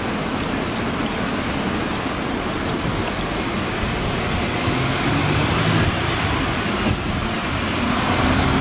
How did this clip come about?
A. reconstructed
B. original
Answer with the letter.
B